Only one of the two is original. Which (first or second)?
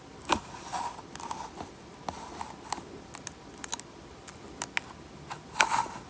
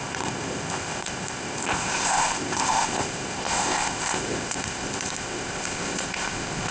first